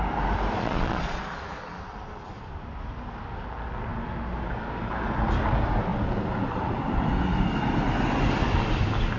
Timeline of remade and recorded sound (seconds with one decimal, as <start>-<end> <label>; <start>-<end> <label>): 0.0-0.6 recorded; 0.6-1.2 remade; 1.2-9.2 recorded